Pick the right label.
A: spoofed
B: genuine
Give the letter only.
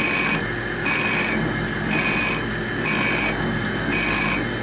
B